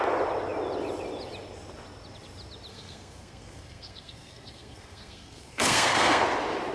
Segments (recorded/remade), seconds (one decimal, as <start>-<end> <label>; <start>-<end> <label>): 0.0-2.7 recorded; 2.7-6.2 remade; 6.2-6.7 recorded